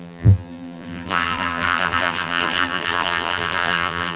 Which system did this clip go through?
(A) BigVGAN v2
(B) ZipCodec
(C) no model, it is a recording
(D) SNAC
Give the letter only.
A